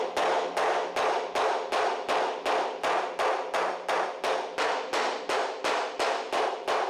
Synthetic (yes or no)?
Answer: no